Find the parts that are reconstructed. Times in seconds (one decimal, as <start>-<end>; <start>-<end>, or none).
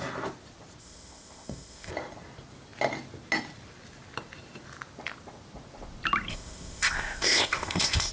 0.8-1.9; 6.3-8.1